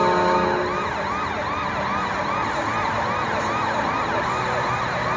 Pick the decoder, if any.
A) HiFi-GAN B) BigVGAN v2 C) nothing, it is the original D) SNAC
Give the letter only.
C